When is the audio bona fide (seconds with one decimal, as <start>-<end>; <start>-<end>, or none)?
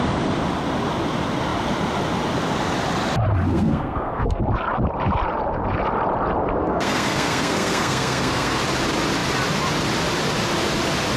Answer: 0.0-3.5; 4.4-6.6; 8.6-11.2